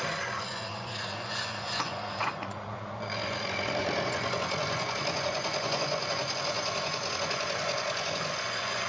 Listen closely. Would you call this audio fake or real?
fake